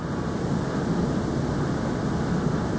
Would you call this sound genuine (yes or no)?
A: yes